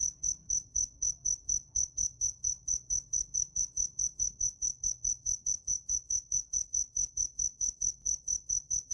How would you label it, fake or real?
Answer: fake